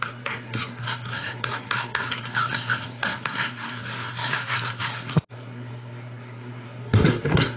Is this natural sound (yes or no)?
no